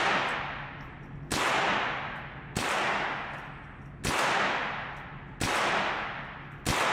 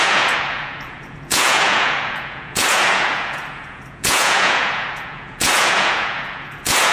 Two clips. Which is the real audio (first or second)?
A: first